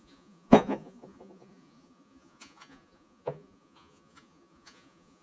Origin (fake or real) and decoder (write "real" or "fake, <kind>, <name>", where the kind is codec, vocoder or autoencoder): fake, vocoder, Vocos